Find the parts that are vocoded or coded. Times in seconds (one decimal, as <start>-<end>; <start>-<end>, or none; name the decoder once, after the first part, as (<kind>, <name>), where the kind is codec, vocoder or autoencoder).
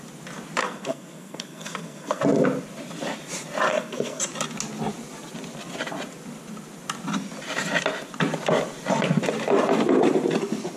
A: 0.6-2.2 (codec, SNAC); 3.7-4.2